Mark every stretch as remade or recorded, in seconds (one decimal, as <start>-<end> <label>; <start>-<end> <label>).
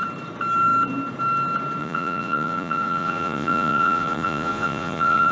0.0-1.8 recorded; 1.8-5.3 remade